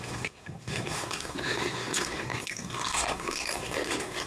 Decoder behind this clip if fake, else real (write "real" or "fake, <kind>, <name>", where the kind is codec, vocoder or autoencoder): fake, codec, SNAC